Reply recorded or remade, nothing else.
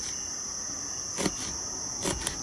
recorded